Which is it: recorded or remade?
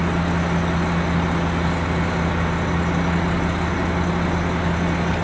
recorded